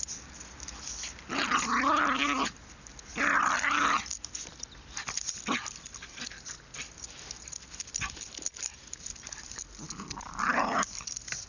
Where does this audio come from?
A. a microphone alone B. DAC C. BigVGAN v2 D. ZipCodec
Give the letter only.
A